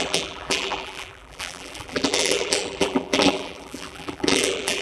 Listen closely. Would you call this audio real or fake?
fake